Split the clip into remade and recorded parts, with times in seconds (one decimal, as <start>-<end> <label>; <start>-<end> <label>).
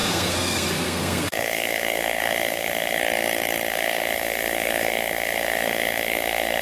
0.0-3.0 remade; 3.0-3.7 recorded; 3.7-6.6 remade